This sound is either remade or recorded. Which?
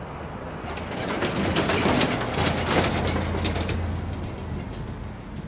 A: recorded